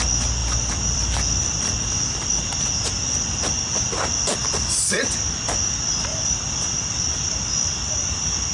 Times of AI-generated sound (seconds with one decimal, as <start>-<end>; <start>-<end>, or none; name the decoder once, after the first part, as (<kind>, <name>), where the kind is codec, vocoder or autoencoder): 0.4-2.3 (vocoder, BigVGAN v2); 4.4-5.0; 6.1-7.0